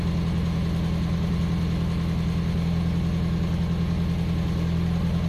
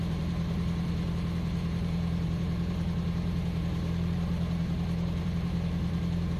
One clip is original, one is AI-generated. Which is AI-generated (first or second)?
second